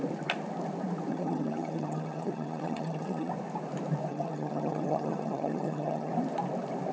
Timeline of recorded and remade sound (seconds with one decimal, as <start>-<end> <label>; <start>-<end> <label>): 0.0-1.1 recorded; 1.1-3.3 remade; 3.3-4.1 recorded; 4.1-6.1 remade; 6.1-6.9 recorded